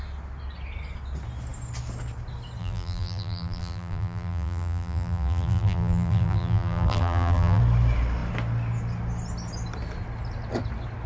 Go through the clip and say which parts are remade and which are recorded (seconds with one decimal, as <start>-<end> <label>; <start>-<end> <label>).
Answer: 0.0-2.6 recorded; 2.6-7.6 remade; 7.6-11.1 recorded